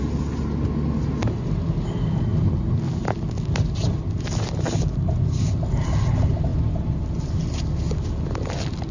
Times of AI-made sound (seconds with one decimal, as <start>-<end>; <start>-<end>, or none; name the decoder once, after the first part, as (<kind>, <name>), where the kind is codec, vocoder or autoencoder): none